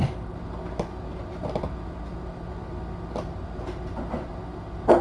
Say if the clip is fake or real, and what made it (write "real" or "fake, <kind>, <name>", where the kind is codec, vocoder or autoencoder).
real